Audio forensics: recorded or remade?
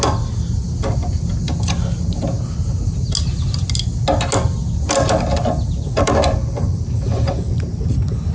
recorded